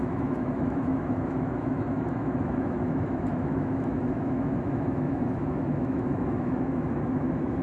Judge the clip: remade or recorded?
remade